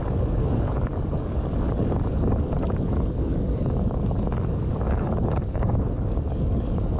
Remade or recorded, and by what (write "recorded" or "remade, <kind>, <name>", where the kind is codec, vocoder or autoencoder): remade, codec, DAC